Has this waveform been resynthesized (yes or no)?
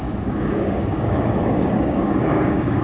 yes